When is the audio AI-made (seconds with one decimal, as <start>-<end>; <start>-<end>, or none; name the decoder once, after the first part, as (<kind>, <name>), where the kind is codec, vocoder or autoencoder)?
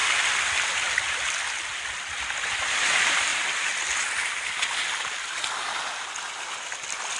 none